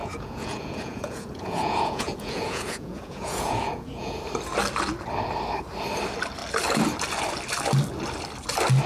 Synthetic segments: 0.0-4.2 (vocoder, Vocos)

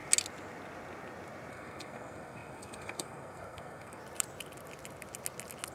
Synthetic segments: 1.5-4.0 (codec, SNAC)

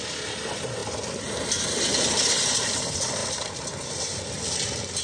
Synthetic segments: none

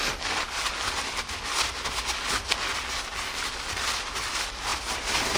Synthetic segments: none

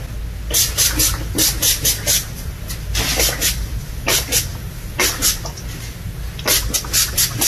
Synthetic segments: 4.5-5.0 (vocoder, BigVGAN v2)

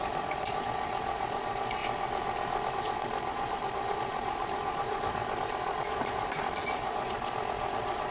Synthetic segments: 0.0-1.8 (vocoder, Vocos); 2.7-8.1

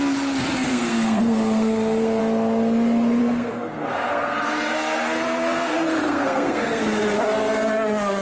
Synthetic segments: 0.7-2.2 (codec, SNAC); 3.2-6.8